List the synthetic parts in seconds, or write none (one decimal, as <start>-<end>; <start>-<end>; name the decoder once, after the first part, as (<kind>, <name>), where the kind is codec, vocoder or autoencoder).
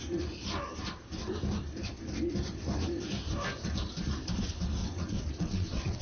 4.8-6.0 (vocoder, WaveNeXt)